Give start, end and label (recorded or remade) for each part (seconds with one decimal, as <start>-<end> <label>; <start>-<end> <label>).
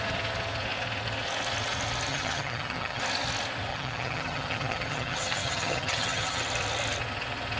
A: 0.0-2.1 recorded; 2.1-3.0 remade; 3.0-3.7 recorded; 3.7-6.4 remade; 6.4-7.6 recorded